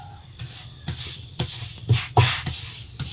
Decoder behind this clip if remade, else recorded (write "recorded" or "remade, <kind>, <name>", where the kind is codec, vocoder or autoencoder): recorded